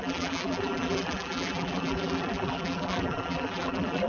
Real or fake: fake